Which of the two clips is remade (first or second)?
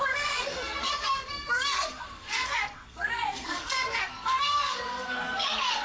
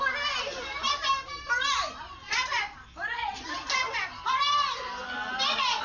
first